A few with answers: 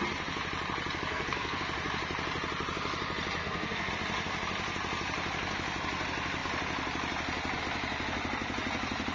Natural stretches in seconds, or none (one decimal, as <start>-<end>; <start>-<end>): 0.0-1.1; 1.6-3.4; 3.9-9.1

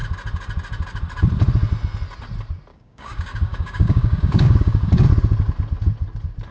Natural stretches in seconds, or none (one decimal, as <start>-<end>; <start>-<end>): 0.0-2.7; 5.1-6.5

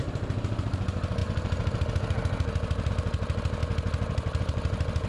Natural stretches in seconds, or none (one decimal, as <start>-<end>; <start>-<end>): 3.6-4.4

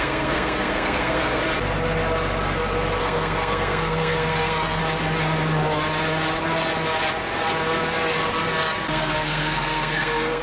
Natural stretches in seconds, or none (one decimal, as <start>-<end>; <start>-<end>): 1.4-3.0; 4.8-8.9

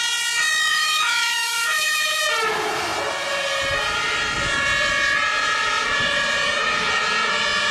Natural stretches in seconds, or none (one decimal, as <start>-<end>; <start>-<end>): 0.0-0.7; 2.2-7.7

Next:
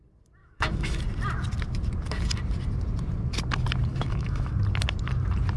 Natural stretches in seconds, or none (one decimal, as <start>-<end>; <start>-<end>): 0.0-0.4; 1.0-3.9; 4.5-5.6

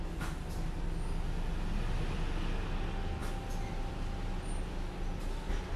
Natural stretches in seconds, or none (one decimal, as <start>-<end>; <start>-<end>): 0.0-5.8